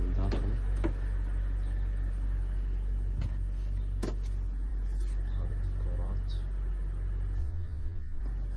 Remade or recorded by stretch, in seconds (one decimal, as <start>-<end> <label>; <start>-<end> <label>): 0.0-7.4 recorded; 7.4-8.2 remade; 8.2-8.6 recorded